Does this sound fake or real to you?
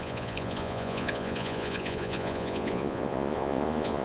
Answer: fake